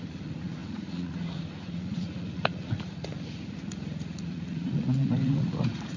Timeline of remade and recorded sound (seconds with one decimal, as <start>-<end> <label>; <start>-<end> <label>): 0.0-6.0 remade